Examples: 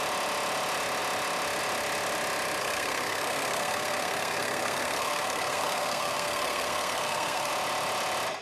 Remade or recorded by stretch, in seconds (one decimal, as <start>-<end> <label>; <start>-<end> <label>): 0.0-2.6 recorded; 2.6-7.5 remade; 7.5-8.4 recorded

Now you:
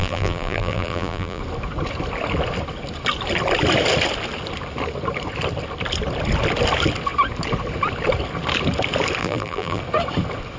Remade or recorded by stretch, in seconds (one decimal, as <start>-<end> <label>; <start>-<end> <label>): 0.0-1.4 remade; 1.4-9.2 recorded; 9.2-9.8 remade; 9.8-10.6 recorded

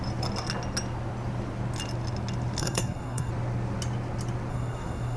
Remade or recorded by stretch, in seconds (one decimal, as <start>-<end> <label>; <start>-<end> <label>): 0.0-2.6 recorded; 2.6-3.3 remade; 3.3-4.5 recorded; 4.5-5.2 remade

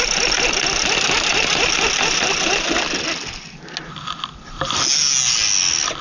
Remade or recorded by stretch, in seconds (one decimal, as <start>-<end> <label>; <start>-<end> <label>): 0.0-6.0 recorded

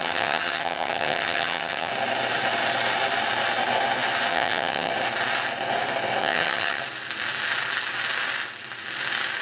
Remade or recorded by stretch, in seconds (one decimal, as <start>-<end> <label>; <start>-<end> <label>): 0.0-1.9 remade; 1.9-4.3 recorded; 4.3-4.9 remade; 4.9-6.2 recorded; 6.2-6.8 remade; 6.8-9.4 recorded